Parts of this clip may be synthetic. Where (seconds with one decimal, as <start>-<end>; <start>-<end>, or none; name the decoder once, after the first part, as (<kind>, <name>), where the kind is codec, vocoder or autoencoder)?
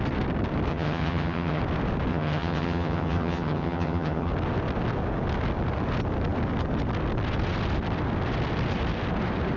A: 0.7-1.6 (vocoder, HiFi-GAN); 2.1-4.3